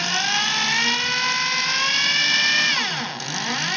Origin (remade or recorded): recorded